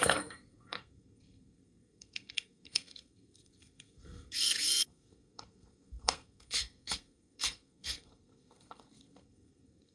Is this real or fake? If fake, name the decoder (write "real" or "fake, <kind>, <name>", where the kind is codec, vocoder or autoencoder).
fake, codec, SNAC